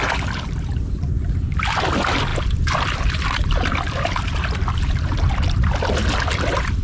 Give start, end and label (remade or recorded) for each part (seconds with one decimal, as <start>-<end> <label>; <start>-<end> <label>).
0.0-6.8 recorded